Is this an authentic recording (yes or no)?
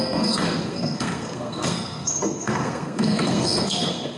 no